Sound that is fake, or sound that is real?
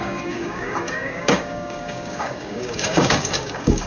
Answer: fake